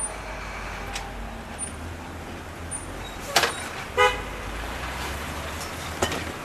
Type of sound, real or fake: real